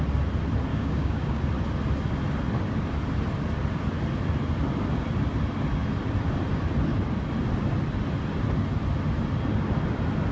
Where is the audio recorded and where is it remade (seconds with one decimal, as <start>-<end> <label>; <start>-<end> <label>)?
0.0-0.7 recorded; 0.7-1.4 remade; 1.4-10.3 recorded

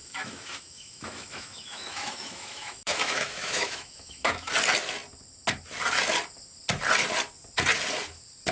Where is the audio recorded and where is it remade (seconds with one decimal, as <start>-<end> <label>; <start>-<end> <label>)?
0.0-4.5 remade; 4.5-8.5 recorded